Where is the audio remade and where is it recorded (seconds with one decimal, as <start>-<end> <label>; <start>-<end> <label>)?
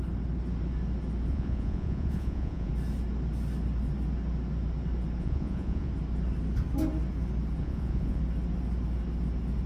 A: 0.0-1.3 recorded; 1.3-2.7 remade; 2.7-5.2 recorded; 5.2-5.9 remade; 5.9-7.6 recorded; 7.6-8.2 remade; 8.2-9.7 recorded